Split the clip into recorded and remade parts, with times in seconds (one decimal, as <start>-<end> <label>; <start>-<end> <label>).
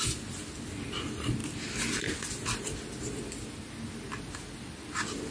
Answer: 0.0-5.3 recorded